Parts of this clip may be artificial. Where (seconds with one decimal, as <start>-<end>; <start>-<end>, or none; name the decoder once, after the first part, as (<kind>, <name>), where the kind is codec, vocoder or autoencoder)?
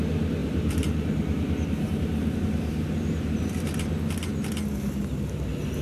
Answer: 0.4-3.9 (vocoder, BigVGAN v2)